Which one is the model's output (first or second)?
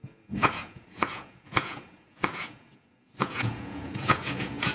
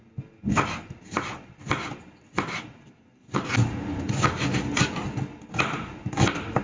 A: first